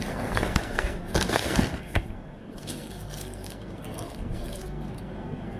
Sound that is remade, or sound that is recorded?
remade